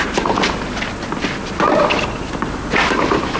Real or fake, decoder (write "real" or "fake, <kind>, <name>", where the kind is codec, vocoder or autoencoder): real